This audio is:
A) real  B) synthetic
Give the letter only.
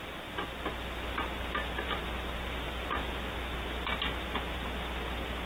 A